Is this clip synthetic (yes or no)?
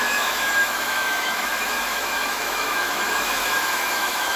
yes